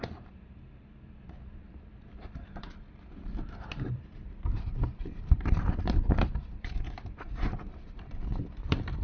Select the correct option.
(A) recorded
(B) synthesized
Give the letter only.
B